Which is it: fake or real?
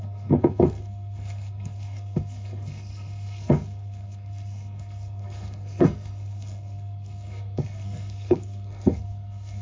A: fake